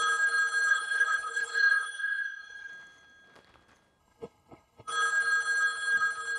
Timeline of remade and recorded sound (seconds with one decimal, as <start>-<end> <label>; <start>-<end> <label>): 0.0-0.7 recorded; 0.7-2.7 remade; 2.7-4.0 recorded; 4.0-4.9 remade; 4.9-6.4 recorded